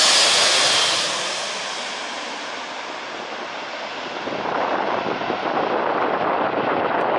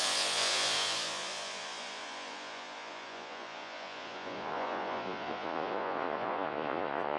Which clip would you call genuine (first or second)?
first